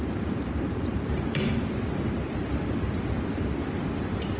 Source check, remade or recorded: recorded